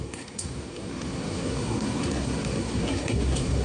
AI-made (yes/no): yes